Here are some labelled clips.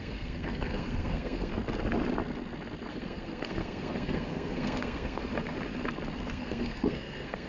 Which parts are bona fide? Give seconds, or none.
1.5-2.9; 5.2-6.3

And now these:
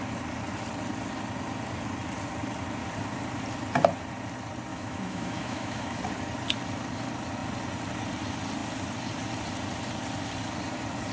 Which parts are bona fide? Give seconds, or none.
0.0-4.7; 6.0-11.1

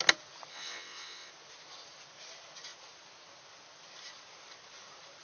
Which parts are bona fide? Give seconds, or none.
0.0-0.5; 1.3-5.2